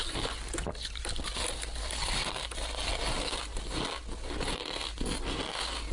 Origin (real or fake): real